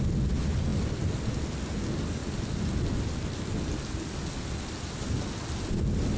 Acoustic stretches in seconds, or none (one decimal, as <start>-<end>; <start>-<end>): 0.0-6.2